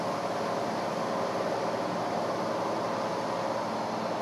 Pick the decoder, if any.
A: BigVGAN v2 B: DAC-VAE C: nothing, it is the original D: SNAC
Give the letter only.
C